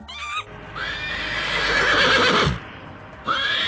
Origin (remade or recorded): recorded